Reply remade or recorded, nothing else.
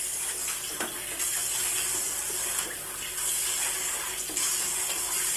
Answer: recorded